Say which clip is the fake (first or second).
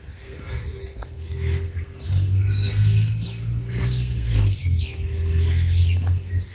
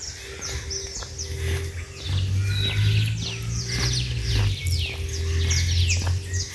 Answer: first